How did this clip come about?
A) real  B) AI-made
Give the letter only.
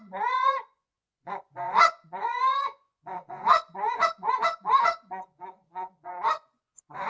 B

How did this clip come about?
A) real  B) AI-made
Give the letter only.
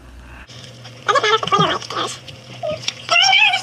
B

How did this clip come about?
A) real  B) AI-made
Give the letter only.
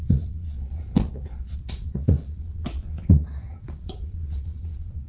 B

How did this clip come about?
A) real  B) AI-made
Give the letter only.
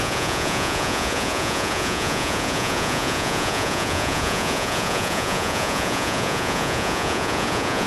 B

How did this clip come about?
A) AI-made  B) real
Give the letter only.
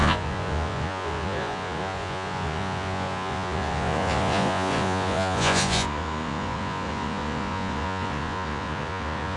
A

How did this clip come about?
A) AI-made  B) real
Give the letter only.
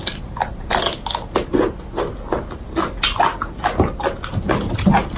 B